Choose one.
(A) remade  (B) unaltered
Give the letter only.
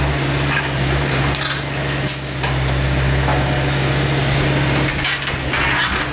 B